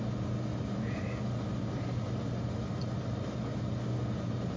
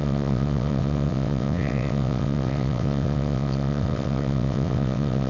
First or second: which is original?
first